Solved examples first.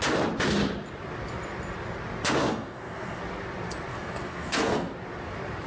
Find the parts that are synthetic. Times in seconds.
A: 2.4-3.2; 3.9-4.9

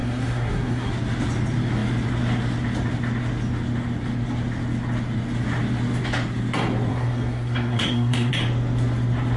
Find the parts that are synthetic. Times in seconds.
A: 0.0-0.9; 6.9-8.3

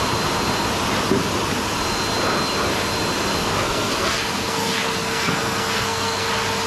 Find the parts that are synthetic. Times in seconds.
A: 3.4-6.3

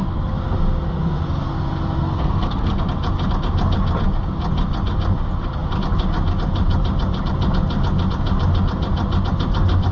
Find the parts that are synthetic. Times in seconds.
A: 2.0-2.8

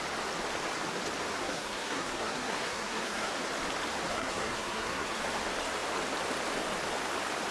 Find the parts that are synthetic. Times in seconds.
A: 1.4-3.3; 4.1-5.2